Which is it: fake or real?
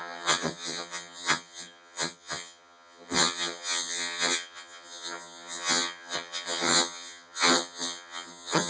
fake